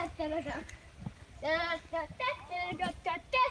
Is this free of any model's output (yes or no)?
yes